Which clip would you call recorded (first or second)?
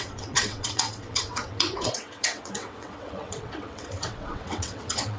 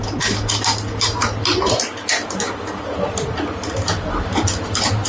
second